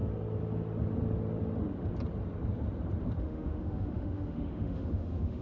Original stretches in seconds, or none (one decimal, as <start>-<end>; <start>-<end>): 0.0-3.2